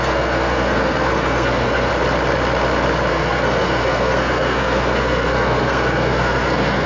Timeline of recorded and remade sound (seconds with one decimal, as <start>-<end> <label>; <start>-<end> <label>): 0.0-1.9 remade; 1.9-3.1 recorded; 3.1-6.9 remade